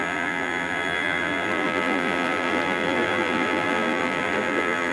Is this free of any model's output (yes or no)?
no